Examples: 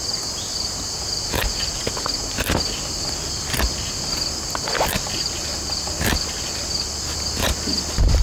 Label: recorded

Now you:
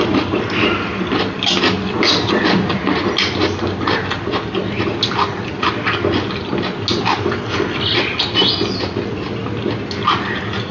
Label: recorded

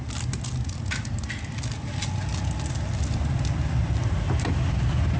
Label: recorded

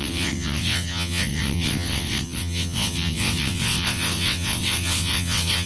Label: remade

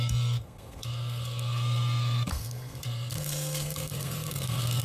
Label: remade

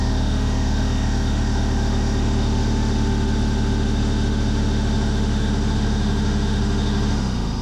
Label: remade